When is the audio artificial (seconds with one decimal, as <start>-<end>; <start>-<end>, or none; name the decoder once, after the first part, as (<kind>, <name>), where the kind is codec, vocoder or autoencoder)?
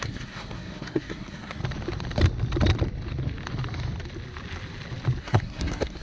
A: 0.0-1.6 (codec, SNAC); 5.2-6.0